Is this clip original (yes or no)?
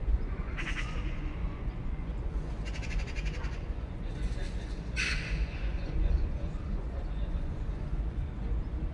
no